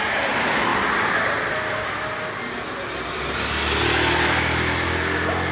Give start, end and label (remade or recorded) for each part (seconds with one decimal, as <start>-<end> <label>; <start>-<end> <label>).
0.0-5.5 recorded